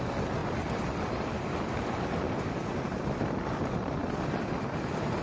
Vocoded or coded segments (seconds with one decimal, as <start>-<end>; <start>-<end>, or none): none